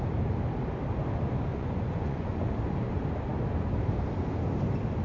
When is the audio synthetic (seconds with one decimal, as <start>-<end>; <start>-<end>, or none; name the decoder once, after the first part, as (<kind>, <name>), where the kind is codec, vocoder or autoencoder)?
1.5-2.5 (vocoder, Vocos)